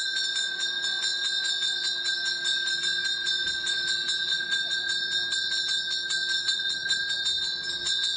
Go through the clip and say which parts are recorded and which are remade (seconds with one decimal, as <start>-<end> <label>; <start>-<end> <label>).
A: 0.0-4.3 recorded; 4.3-4.8 remade; 4.8-6.4 recorded; 6.4-7.0 remade; 7.0-8.2 recorded